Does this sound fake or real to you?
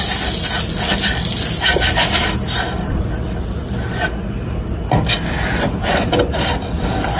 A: real